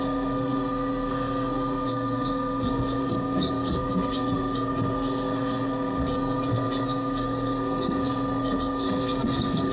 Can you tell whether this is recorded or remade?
remade